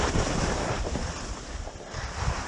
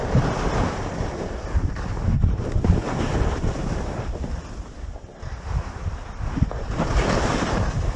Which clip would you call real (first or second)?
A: second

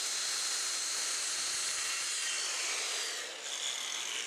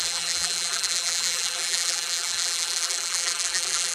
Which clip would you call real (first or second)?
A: first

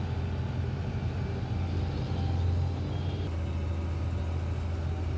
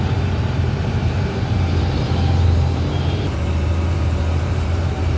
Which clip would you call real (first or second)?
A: first